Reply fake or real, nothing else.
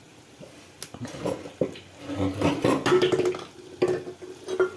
real